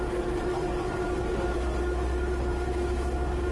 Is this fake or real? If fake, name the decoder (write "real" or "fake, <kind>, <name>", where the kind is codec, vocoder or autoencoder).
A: real